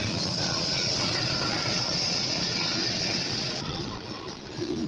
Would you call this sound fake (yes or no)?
yes